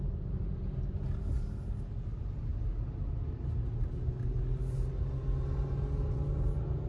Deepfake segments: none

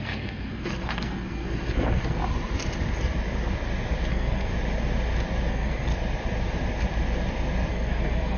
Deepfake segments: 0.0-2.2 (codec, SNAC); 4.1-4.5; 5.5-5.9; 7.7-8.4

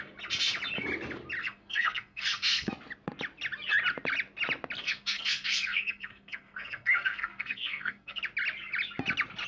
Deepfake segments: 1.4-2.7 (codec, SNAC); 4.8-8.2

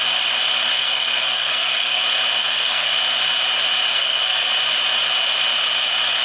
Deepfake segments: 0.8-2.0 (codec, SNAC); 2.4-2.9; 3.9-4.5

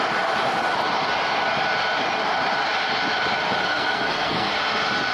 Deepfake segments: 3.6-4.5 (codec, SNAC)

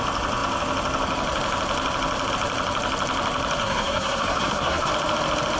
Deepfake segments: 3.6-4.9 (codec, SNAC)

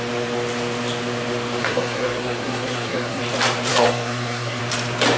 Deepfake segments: 1.6-3.2 (codec, SNAC); 3.7-4.6

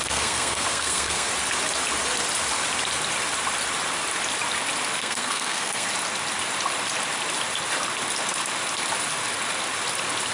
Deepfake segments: 0.0-1.3 (codec, SNAC); 5.0-5.9